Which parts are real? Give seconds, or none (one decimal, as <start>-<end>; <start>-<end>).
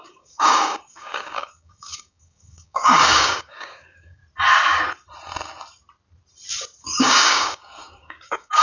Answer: 4.2-6.8